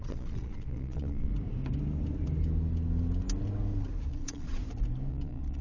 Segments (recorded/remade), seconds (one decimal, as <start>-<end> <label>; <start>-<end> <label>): 0.0-1.3 remade; 1.3-4.1 recorded; 4.1-4.6 remade; 4.6-5.1 recorded; 5.1-5.6 remade